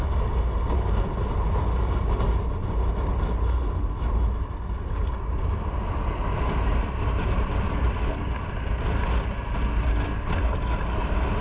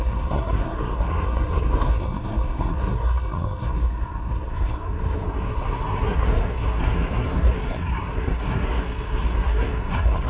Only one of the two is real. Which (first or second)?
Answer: first